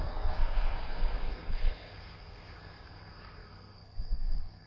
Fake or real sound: fake